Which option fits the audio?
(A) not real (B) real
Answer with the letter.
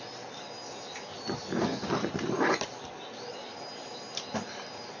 B